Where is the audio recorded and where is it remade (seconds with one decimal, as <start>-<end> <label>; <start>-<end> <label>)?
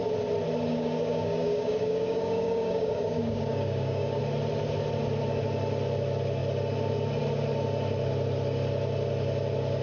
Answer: 0.0-0.7 recorded; 0.7-4.2 remade; 4.2-9.8 recorded